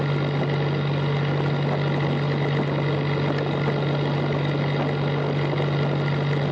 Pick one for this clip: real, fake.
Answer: real